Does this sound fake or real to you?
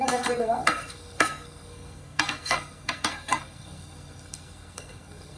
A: fake